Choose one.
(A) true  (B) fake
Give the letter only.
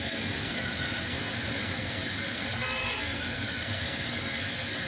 B